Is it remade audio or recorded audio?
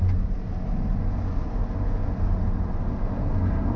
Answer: recorded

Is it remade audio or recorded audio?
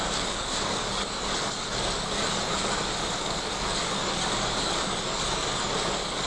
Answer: remade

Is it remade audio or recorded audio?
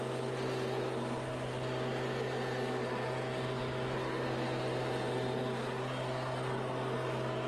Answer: recorded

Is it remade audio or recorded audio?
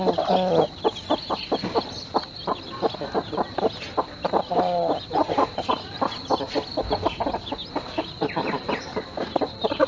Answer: recorded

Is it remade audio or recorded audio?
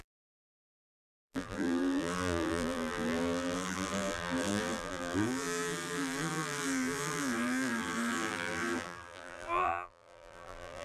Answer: remade